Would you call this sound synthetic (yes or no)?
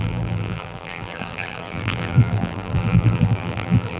yes